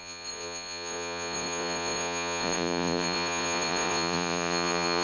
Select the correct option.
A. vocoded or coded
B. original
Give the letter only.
A